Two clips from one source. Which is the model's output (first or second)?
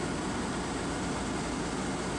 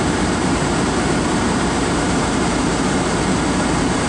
second